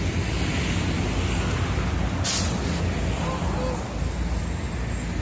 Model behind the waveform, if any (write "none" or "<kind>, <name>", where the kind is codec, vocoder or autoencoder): none